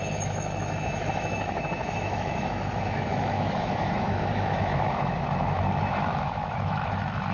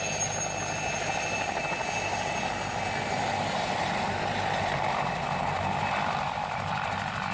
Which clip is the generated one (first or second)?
first